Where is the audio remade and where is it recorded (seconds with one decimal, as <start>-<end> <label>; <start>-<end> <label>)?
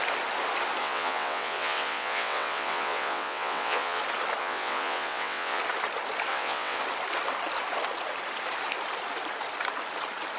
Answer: 0.0-0.8 recorded; 0.8-4.0 remade; 4.0-4.4 recorded; 4.4-5.6 remade; 5.6-6.3 recorded; 6.3-6.8 remade; 6.8-10.4 recorded